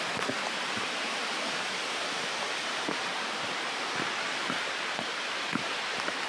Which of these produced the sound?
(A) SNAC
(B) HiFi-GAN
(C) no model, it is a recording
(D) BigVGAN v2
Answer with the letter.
D